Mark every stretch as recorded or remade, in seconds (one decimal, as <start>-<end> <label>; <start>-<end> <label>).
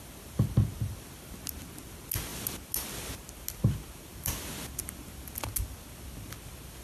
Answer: 0.0-6.8 recorded